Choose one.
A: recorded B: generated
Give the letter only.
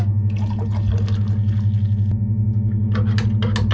A